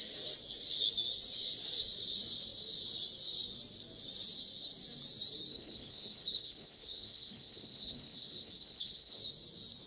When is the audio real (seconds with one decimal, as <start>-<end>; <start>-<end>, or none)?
0.0-5.5; 9.2-9.9